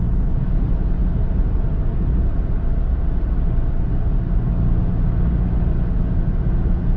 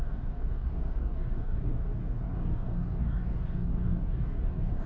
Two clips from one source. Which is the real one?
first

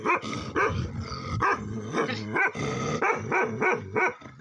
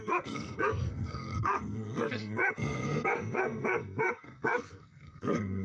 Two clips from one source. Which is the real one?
first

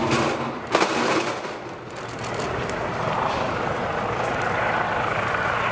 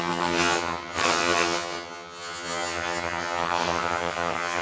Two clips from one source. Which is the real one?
first